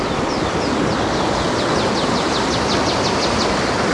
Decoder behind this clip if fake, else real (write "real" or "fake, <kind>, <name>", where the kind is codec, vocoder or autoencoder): real